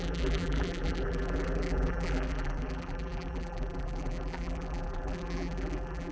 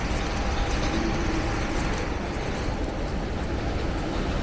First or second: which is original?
second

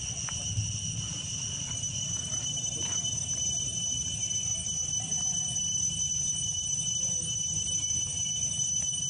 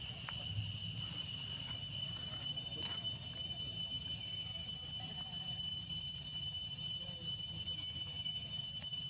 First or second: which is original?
second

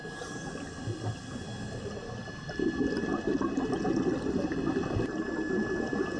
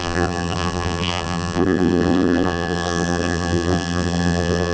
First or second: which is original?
first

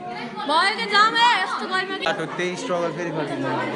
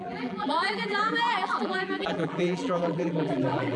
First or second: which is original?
first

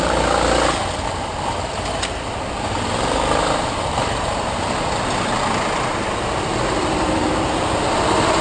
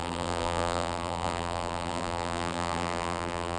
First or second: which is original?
first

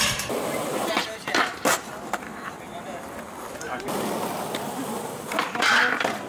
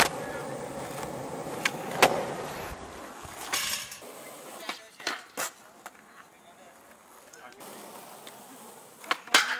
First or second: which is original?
second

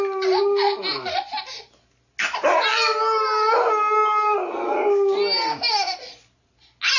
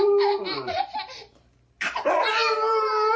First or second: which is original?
first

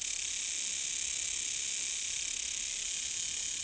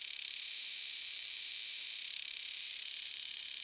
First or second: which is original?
first